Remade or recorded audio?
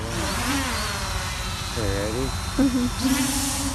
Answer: recorded